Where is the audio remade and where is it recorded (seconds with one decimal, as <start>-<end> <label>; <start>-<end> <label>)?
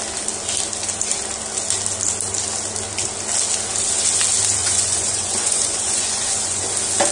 0.0-4.6 recorded; 4.6-6.6 remade; 6.6-7.1 recorded